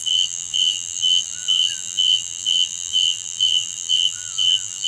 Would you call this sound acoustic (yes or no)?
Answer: no